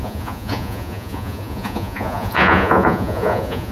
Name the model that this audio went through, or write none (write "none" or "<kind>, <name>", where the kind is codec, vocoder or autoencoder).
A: vocoder, Vocos